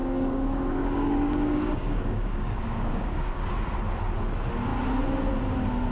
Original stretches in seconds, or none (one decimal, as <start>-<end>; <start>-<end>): 3.5-5.9